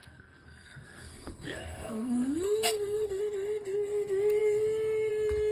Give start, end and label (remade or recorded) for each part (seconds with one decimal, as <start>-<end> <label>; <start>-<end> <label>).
0.0-3.2 remade; 3.2-5.5 recorded